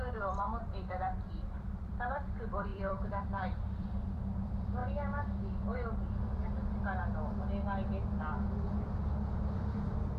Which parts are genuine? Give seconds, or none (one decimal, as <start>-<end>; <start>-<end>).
4.8-8.2